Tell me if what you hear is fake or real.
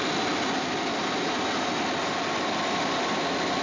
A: real